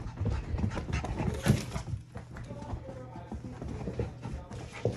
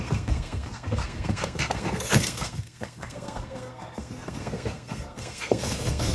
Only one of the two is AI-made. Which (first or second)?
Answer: second